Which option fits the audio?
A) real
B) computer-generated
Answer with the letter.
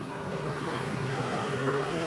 B